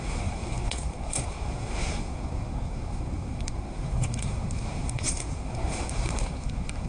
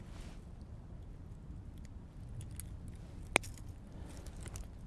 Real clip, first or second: second